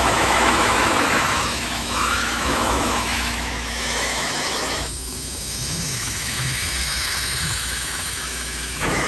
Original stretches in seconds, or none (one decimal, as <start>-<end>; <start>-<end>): none